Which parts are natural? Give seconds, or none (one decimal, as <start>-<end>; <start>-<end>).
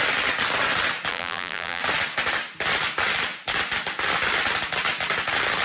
0.0-1.1; 1.8-5.6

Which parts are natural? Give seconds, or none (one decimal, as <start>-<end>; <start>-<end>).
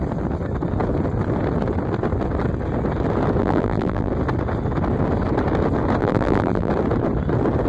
0.0-3.4; 4.1-6.0; 6.7-7.7